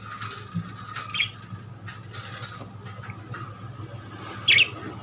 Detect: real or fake real